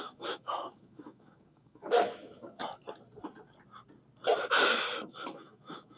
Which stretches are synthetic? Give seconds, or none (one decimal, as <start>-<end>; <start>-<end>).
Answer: 0.0-2.6; 4.5-6.0